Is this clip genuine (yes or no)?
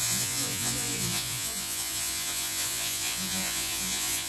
no